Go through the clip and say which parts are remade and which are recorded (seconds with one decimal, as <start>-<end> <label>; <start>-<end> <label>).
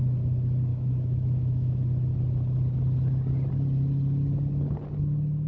0.0-0.7 recorded; 0.7-1.8 remade; 1.8-5.5 recorded